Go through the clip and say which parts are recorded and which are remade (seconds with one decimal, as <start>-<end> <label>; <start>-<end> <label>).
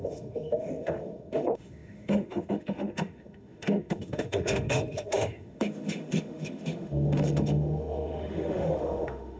0.0-9.4 remade